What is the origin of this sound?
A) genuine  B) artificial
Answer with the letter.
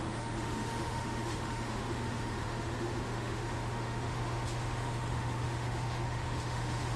B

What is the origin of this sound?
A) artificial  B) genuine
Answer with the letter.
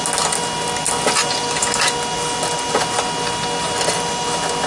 B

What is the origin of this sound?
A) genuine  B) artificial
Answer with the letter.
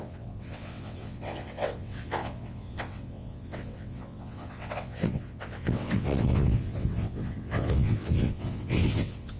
B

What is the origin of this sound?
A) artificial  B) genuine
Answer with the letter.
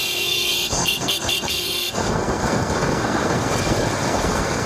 A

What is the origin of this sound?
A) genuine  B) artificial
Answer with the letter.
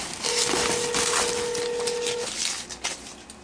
A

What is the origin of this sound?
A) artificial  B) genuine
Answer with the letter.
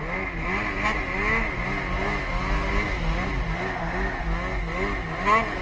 B